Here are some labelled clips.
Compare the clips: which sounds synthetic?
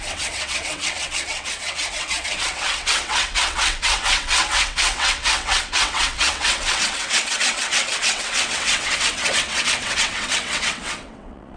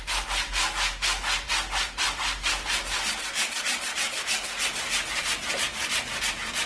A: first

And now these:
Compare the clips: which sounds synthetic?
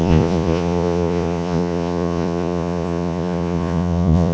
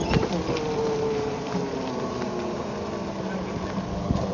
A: first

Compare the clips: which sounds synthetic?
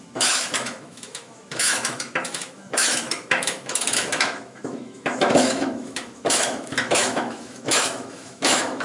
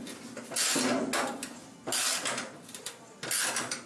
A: first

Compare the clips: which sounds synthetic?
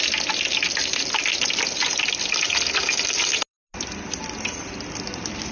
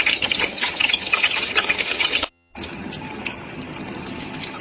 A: second